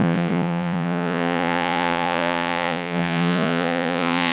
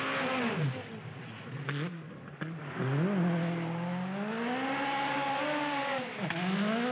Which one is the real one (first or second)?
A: second